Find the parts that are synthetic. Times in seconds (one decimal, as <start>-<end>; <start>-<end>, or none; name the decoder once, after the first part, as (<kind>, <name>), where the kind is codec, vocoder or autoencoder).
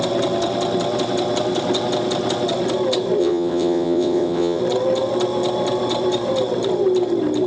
3.2-4.6 (vocoder, WaveNeXt)